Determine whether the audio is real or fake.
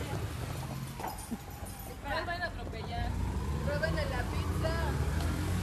real